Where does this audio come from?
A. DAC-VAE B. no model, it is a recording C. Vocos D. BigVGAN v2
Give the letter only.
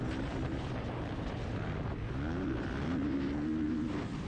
B